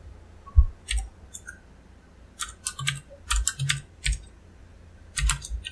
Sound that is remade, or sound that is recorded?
recorded